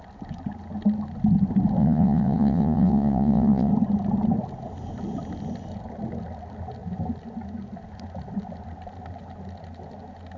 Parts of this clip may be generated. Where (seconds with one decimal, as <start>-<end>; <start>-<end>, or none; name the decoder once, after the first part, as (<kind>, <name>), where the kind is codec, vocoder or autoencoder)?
1.8-3.7 (vocoder, WaveNeXt)